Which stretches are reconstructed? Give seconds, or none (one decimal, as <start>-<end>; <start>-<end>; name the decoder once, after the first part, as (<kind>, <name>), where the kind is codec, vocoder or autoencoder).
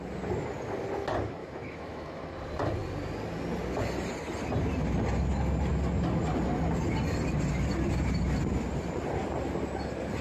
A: 1.4-2.2 (autoencoder, DAC-VAE)